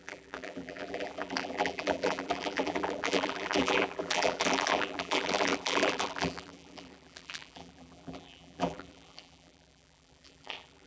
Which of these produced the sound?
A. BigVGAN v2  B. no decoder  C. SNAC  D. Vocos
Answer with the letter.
A